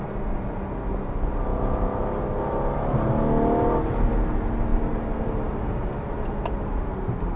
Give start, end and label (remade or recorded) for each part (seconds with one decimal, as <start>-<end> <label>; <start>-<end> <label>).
0.0-7.4 recorded